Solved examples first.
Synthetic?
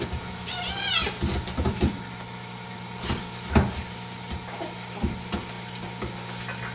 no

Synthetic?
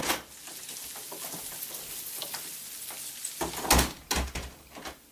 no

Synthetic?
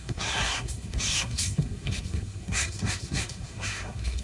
yes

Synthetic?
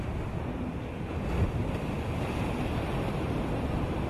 no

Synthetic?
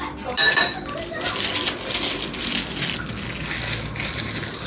no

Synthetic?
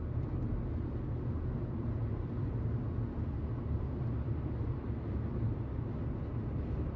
no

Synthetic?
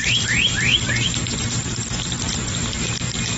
no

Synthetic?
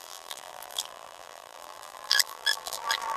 yes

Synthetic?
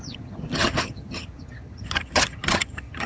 yes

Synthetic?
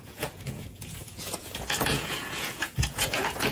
yes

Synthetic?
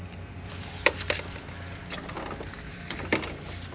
no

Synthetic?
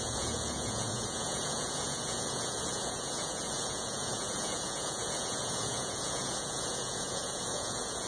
yes